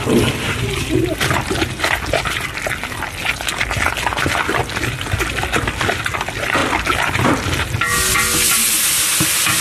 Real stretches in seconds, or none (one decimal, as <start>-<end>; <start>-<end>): 0.0-9.6